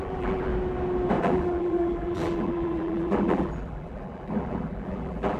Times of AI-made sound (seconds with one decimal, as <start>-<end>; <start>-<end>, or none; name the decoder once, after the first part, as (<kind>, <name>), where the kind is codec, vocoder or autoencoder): 0.0-0.5 (vocoder, BigVGAN v2); 1.2-5.4